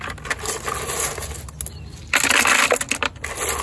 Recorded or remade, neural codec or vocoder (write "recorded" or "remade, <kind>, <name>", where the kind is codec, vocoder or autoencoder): recorded